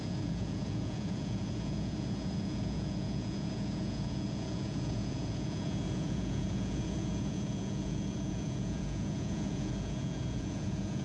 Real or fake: fake